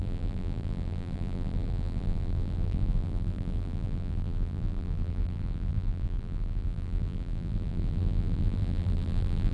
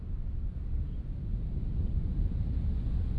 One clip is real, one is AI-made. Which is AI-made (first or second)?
first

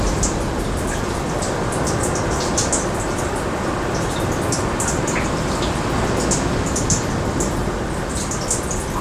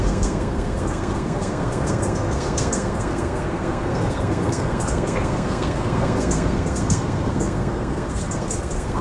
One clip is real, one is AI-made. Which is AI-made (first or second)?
second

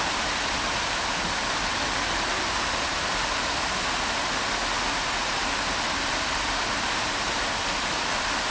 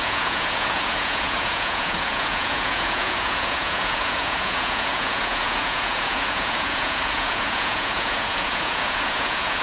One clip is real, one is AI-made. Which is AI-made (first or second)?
second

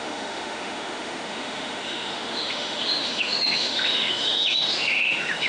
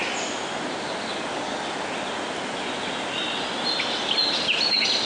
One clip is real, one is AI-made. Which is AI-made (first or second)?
first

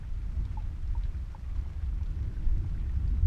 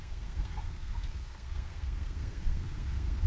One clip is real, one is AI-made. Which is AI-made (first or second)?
second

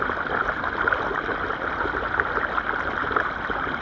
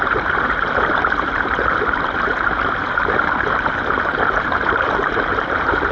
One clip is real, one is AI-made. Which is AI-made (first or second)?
second